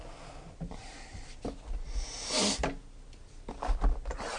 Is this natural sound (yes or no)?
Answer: yes